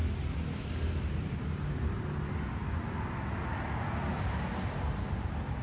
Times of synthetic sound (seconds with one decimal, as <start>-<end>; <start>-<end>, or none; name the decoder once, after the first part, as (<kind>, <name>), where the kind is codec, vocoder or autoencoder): none